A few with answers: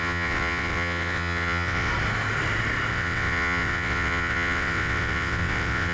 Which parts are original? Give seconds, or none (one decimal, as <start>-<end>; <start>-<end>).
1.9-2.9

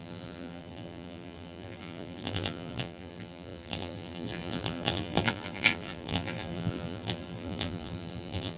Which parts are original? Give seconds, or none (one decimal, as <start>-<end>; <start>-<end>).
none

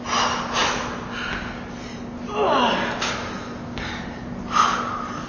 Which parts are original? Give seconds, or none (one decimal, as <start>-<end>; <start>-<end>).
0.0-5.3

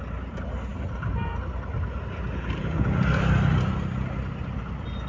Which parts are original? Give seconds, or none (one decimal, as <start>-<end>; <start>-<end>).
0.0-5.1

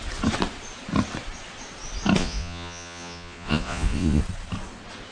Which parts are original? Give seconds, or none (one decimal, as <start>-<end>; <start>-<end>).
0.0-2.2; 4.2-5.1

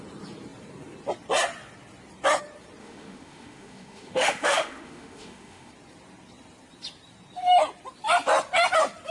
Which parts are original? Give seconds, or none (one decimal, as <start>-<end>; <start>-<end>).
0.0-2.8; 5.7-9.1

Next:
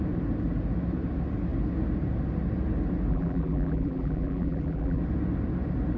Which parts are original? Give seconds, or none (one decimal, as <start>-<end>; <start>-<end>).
0.0-3.1; 5.0-6.0